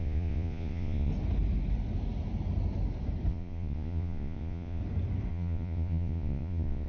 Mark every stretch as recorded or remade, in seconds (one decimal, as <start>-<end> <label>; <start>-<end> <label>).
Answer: 0.0-1.1 remade; 1.1-3.3 recorded; 3.3-4.8 remade; 4.8-5.3 recorded; 5.3-6.9 remade